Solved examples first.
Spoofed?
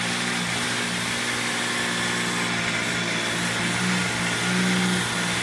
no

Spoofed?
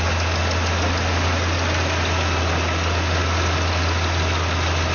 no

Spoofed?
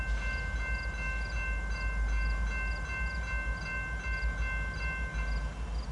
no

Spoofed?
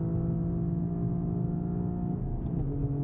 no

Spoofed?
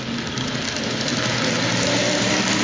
no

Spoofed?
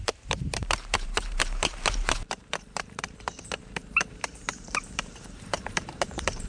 yes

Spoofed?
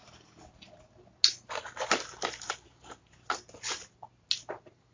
no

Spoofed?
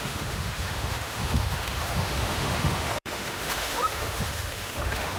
yes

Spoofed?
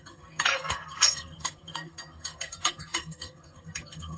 yes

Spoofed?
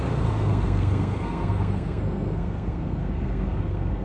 yes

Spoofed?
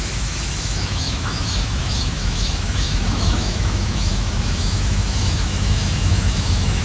yes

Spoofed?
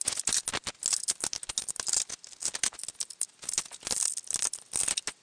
no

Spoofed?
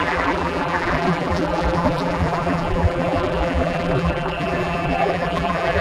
yes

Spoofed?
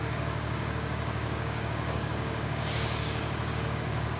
yes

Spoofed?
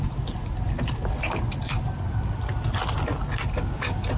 no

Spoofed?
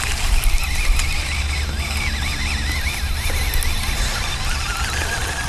no